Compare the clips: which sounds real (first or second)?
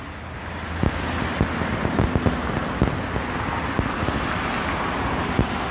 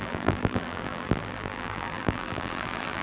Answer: first